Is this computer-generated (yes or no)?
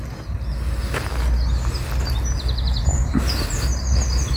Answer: no